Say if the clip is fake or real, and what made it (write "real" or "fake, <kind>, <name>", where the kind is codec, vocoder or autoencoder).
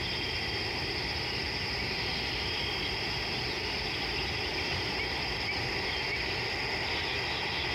real